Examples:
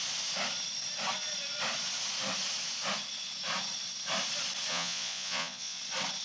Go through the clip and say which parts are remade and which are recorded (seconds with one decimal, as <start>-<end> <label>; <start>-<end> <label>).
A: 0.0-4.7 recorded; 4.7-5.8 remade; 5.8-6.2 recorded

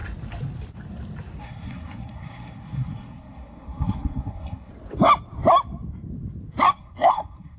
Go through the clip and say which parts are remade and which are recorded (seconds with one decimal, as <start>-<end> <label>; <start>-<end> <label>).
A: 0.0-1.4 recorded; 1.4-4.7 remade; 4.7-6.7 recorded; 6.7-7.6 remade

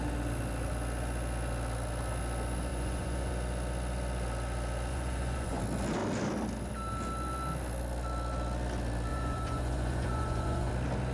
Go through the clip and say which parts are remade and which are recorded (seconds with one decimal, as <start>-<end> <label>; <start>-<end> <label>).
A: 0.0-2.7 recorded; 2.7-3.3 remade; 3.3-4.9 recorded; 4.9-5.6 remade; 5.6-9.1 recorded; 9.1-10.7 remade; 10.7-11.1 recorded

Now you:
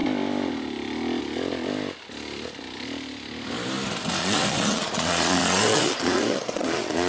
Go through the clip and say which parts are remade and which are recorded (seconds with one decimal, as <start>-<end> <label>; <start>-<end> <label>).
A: 0.0-4.2 recorded; 4.2-7.1 remade

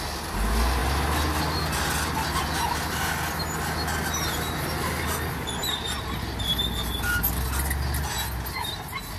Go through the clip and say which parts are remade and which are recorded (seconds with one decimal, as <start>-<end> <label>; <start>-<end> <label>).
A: 0.0-9.2 recorded

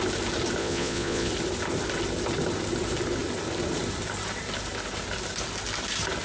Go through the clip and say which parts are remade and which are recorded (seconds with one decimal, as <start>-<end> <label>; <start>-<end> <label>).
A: 0.0-0.6 recorded; 0.6-1.3 remade; 1.3-6.2 recorded